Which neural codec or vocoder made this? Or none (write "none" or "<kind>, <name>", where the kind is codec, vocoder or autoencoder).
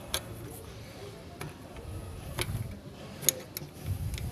none